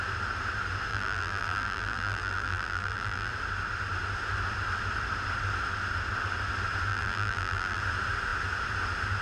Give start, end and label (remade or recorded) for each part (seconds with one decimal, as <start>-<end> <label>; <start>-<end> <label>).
0.0-0.9 recorded; 0.9-3.3 remade; 3.3-6.9 recorded; 6.9-7.8 remade; 7.8-9.2 recorded